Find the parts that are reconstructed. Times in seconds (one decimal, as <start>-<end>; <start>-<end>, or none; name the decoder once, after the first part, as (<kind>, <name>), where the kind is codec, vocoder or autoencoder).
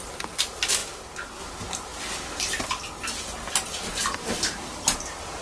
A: none